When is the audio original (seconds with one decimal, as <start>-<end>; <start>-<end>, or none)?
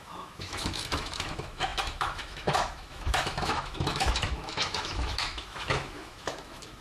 none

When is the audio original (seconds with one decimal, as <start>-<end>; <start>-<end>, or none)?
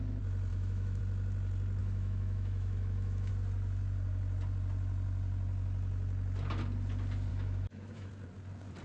0.0-0.5; 1.0-1.8; 3.3-7.3; 8.1-8.8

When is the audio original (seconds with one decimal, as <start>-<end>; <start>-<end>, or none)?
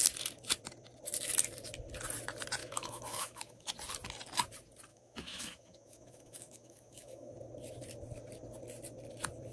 0.0-2.6; 3.7-4.9; 7.3-9.5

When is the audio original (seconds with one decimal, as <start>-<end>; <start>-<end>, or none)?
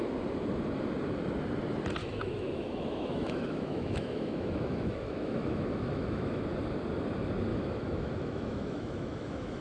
0.0-2.0; 6.4-7.5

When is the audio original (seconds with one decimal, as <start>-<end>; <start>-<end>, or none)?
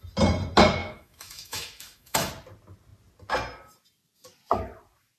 0.0-0.8; 2.3-5.2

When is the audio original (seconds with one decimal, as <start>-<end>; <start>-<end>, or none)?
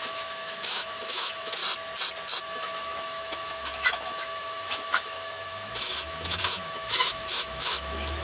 1.6-2.4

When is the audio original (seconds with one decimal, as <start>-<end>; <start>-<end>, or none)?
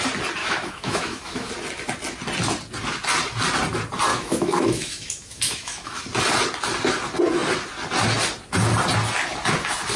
0.0-0.4; 1.5-4.1; 6.0-10.0